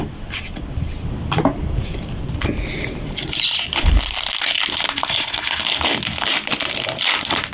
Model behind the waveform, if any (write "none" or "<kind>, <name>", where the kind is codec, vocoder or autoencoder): none